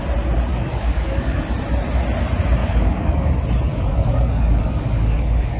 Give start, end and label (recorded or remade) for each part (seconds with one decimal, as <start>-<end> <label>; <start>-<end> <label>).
0.0-0.5 recorded; 0.5-1.4 remade; 1.4-2.6 recorded; 2.6-3.3 remade; 3.3-3.7 recorded; 3.7-5.6 remade